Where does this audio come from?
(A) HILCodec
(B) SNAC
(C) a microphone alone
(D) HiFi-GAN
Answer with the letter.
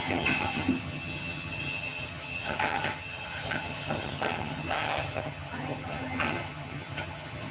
D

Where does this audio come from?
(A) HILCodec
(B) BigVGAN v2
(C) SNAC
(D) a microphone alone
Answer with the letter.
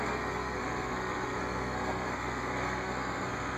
C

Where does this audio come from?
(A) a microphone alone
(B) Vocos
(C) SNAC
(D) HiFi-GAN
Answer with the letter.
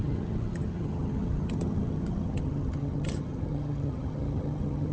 D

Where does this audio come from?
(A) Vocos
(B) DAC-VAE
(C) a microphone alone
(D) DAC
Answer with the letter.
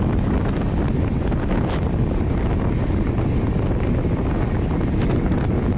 C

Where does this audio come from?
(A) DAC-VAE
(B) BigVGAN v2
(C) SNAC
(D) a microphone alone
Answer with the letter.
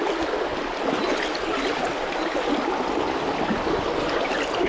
D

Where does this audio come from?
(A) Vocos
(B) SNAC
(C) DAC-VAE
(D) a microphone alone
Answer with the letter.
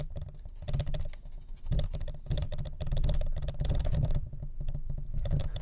D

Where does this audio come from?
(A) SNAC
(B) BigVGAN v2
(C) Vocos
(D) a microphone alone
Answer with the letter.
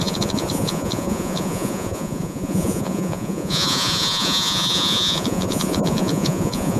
C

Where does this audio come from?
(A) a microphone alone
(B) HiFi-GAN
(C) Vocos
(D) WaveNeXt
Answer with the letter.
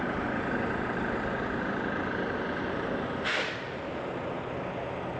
A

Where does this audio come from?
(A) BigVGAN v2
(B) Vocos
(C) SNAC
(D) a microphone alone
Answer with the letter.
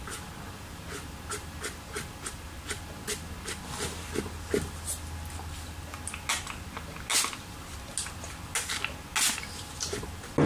D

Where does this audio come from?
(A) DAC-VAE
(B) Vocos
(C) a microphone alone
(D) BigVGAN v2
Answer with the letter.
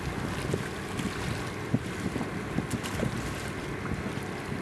C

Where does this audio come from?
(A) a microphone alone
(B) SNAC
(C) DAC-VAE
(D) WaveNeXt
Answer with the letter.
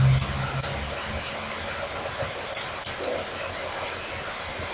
A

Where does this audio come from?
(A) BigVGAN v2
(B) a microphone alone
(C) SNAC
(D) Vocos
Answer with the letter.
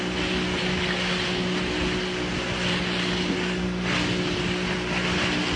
B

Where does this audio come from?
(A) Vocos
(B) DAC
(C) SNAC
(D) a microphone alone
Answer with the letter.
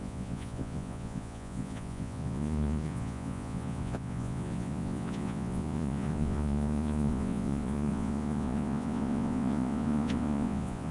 A